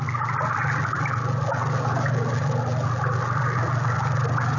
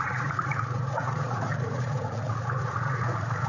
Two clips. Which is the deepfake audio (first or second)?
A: second